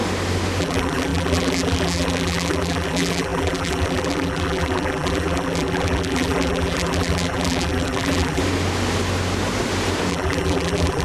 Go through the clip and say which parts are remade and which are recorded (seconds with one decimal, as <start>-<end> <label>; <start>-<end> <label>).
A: 0.0-0.6 recorded; 0.6-8.4 remade; 8.4-10.1 recorded; 10.1-11.0 remade